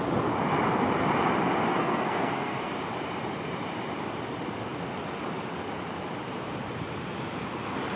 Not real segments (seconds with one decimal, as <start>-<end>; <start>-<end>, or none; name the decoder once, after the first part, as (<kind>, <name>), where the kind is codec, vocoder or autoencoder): 1.7-2.7 (codec, SNAC)